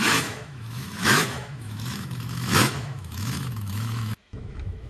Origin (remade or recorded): remade